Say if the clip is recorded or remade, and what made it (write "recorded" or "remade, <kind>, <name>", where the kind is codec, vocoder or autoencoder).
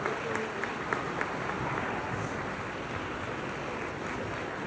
recorded